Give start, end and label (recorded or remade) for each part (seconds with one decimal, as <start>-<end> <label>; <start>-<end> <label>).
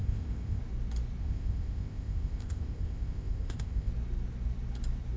0.0-0.6 remade; 0.6-1.2 recorded; 1.2-3.9 remade; 3.9-5.2 recorded